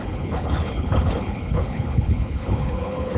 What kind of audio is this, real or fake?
fake